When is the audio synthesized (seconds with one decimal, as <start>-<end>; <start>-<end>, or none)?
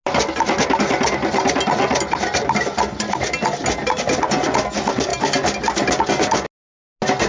none